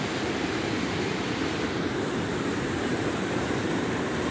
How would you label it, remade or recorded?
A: remade